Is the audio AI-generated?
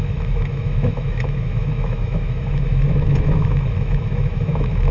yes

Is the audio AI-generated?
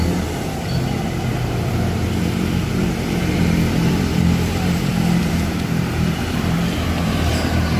yes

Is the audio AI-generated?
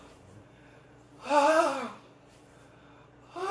yes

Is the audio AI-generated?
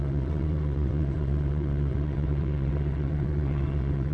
yes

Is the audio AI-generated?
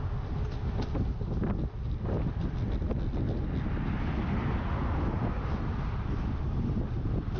no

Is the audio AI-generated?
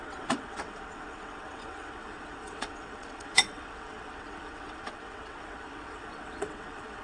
yes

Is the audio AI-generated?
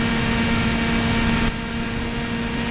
no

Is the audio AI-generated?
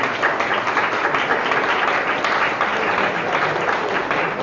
no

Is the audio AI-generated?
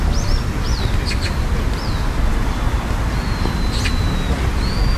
no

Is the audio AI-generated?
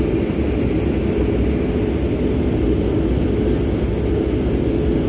no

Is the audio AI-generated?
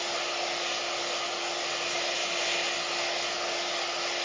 no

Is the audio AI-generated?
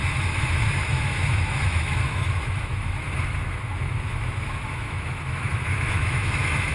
yes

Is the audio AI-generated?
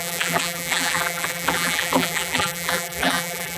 yes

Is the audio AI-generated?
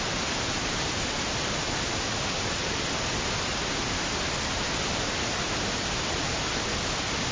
no